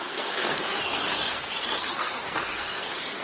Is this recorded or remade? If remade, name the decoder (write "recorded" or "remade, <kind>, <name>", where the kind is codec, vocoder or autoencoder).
remade, codec, SNAC